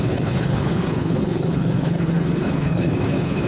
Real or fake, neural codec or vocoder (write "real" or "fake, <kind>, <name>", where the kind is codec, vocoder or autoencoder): fake, codec, HILCodec